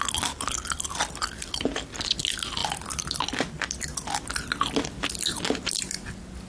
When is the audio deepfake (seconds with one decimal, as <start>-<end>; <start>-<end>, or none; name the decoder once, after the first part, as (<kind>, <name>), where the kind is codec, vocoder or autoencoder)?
none